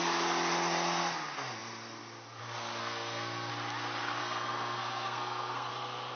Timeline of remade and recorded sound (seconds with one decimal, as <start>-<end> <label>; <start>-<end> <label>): 0.0-2.8 recorded; 2.8-3.5 remade; 3.5-4.2 recorded; 4.2-5.7 remade; 5.7-6.2 recorded